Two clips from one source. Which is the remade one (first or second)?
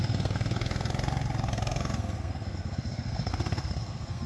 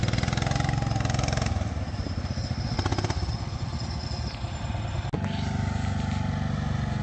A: first